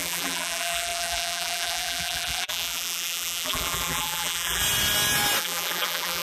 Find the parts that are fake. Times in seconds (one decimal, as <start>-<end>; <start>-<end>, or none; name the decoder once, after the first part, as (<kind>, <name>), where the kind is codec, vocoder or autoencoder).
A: 0.0-4.6 (vocoder, BigVGAN v2); 5.4-6.2